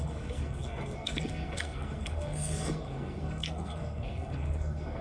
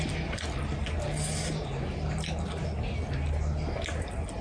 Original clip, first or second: second